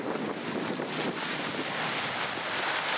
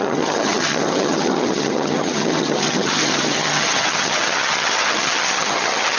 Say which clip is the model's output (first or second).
second